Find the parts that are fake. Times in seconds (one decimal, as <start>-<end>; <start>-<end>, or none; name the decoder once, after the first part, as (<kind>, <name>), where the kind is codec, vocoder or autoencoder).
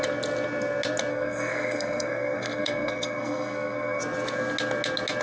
1.1-4.0 (codec, SNAC)